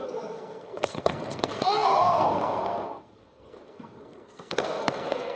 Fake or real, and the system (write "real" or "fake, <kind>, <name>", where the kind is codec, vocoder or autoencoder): fake, codec, SNAC